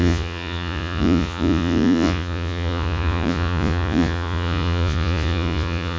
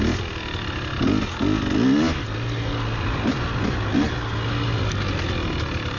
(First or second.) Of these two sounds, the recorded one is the second